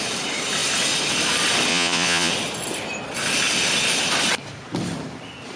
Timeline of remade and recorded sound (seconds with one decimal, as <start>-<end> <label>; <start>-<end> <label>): 0.0-1.7 recorded; 1.7-2.3 remade; 2.3-5.6 recorded